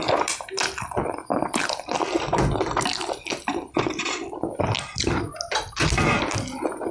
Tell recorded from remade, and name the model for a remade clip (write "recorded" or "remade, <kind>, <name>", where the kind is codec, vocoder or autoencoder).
recorded